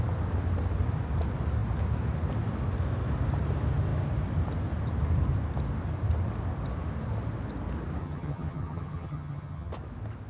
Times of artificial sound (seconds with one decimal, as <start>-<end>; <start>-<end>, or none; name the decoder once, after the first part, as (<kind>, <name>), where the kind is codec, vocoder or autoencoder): 8.0-9.7 (vocoder, HiFi-GAN)